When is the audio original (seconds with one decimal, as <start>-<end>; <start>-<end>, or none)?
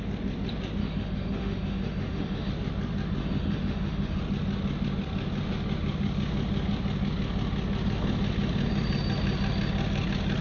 0.0-0.8; 2.5-3.2; 4.2-10.4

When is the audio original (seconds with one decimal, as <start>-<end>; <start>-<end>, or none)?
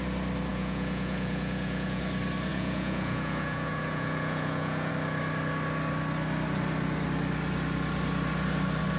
0.0-0.5; 2.0-2.5; 4.9-9.0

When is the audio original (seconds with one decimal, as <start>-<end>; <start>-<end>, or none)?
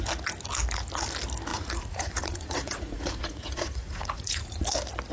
0.0-1.5; 4.6-5.1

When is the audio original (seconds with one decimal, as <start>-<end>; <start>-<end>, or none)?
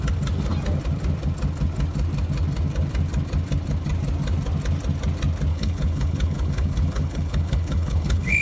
0.0-5.5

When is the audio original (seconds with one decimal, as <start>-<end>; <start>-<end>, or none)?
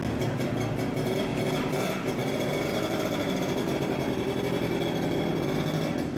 0.0-1.3; 4.4-6.2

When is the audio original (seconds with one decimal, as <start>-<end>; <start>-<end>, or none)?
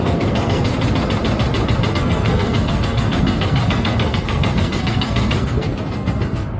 0.7-1.9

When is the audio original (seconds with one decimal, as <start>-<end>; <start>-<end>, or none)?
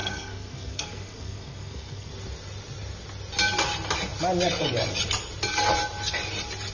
2.1-6.7